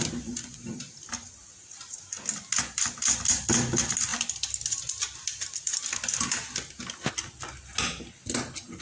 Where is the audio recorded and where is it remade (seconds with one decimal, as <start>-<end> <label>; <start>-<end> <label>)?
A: 0.0-8.8 recorded